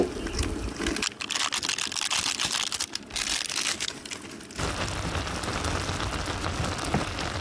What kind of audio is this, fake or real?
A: real